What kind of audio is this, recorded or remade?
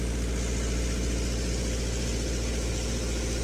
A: recorded